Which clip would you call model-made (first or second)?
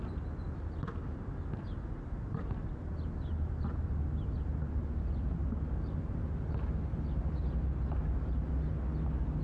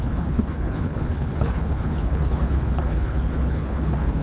second